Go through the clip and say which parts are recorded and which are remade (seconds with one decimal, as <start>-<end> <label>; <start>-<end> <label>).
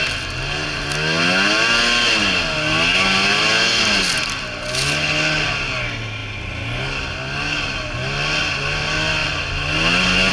0.0-10.3 recorded